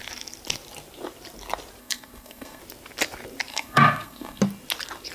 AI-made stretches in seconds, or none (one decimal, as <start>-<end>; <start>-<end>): 1.8-2.6; 3.5-4.4